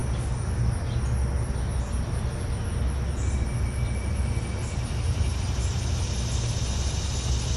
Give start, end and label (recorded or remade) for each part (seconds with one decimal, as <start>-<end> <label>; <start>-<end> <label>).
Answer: 0.0-0.6 remade; 0.6-7.6 recorded